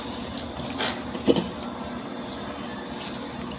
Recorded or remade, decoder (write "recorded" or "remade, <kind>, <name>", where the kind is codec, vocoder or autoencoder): recorded